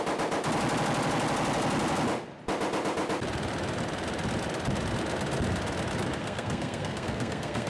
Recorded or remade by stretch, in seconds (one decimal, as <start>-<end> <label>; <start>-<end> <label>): 0.0-6.2 recorded; 6.2-7.7 remade

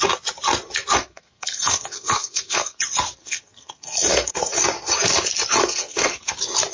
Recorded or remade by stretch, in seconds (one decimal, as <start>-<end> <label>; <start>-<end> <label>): 0.0-1.0 recorded; 1.0-2.8 remade; 2.8-3.2 recorded; 3.2-4.3 remade; 4.3-5.6 recorded; 5.6-6.3 remade; 6.3-6.7 recorded

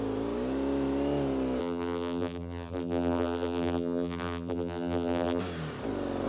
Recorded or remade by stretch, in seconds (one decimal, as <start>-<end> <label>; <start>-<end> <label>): 0.0-1.6 recorded; 1.6-5.4 remade; 5.4-6.3 recorded

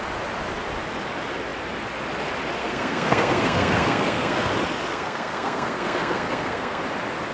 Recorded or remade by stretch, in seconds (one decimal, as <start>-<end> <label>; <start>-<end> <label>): 0.0-2.6 recorded; 2.6-4.5 remade; 4.5-4.9 recorded; 4.9-6.8 remade; 6.8-7.3 recorded

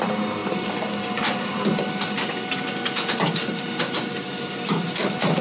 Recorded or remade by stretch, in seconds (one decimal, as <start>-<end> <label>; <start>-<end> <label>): 0.0-5.4 recorded

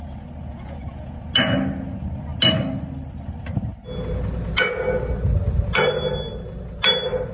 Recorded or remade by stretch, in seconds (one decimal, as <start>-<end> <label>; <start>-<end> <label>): 0.0-0.5 recorded; 0.5-1.2 remade; 1.2-7.3 recorded